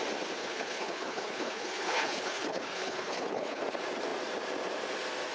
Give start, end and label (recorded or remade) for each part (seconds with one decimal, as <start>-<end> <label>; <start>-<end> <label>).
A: 0.0-0.4 recorded; 0.4-3.6 remade; 3.6-5.3 recorded